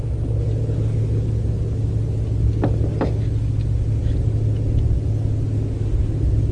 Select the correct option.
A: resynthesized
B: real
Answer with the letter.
B